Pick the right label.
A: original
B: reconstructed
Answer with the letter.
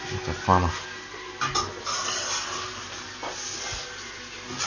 A